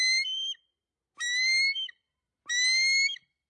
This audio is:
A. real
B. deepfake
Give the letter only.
A